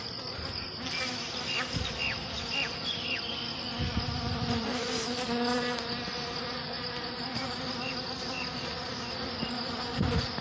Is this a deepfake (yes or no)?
no